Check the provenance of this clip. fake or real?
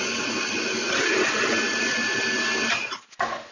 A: real